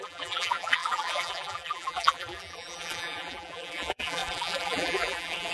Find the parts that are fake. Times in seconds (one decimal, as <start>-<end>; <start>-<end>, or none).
0.0-5.5